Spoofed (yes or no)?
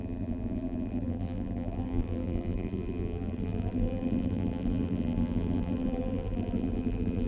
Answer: yes